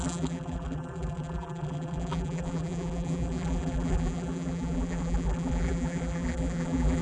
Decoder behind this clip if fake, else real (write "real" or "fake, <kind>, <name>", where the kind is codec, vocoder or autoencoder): fake, vocoder, BigVGAN v2